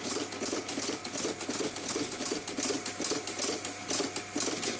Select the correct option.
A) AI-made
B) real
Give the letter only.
B